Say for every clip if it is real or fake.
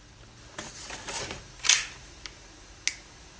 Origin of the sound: real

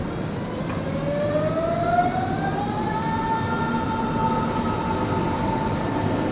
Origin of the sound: real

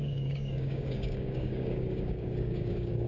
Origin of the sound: fake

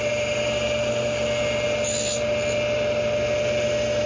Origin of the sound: real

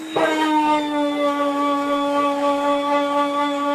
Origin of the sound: fake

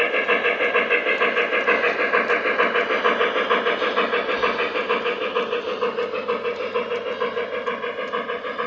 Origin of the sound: real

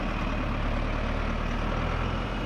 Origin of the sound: real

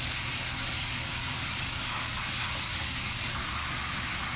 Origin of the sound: fake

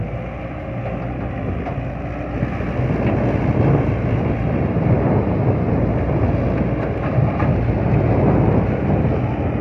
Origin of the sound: real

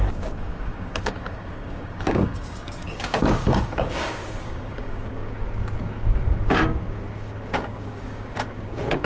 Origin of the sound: fake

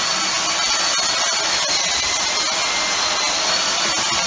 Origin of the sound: real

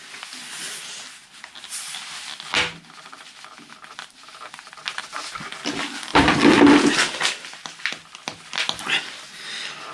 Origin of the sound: real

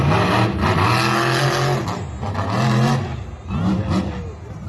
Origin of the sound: real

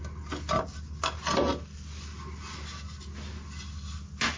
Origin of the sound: real